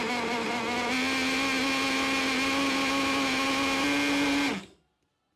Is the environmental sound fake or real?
real